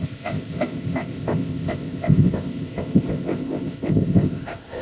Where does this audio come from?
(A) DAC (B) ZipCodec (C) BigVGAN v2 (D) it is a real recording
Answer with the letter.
B